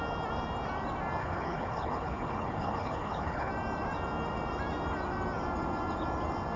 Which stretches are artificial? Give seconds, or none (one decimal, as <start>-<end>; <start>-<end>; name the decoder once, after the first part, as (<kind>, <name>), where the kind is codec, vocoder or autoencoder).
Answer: 1.2-3.5 (codec, HILCodec)